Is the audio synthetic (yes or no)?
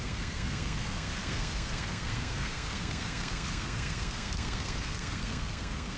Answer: yes